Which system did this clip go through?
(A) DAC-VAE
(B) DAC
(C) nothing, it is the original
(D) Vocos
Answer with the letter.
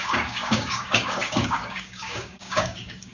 B